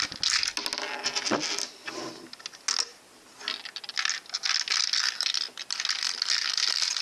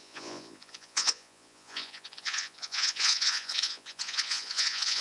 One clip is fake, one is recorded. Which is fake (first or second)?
second